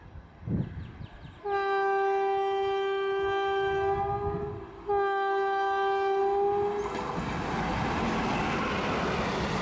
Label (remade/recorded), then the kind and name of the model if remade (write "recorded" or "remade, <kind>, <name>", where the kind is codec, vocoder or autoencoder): recorded